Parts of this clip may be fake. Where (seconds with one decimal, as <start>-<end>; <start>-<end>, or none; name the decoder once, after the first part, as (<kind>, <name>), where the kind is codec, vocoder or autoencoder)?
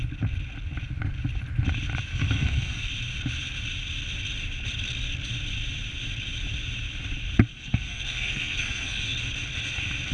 2.1-2.9 (codec, SNAC); 7.5-9.0